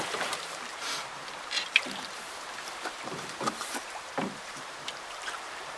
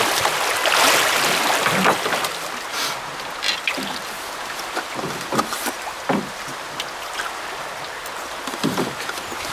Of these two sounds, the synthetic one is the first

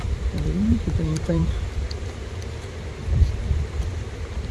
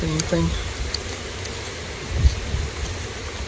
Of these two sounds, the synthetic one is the first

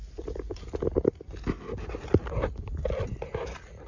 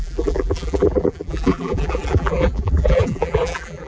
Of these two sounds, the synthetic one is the second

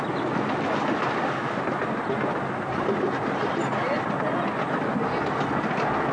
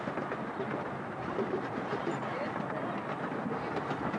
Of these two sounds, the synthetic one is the second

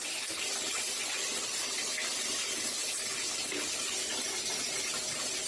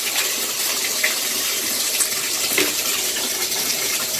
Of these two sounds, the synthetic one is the second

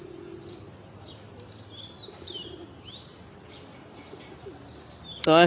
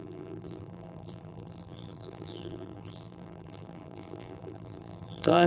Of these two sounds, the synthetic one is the second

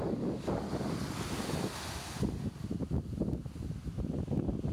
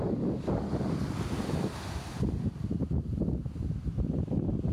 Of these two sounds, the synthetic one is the second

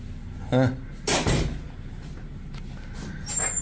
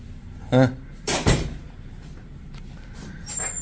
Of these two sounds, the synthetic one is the second